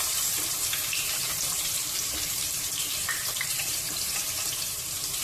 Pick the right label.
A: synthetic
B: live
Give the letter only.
A